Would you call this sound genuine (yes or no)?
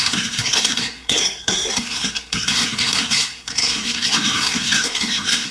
no